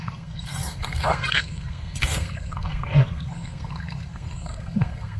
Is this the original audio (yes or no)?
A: no